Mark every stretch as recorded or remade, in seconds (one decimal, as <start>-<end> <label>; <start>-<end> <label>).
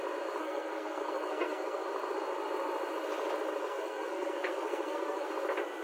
0.0-0.4 recorded; 0.4-1.9 remade; 1.9-3.6 recorded; 3.6-5.3 remade; 5.3-5.8 recorded